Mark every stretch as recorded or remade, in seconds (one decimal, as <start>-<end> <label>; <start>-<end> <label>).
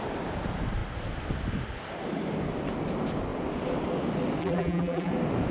0.0-4.4 recorded; 4.4-5.1 remade; 5.1-5.5 recorded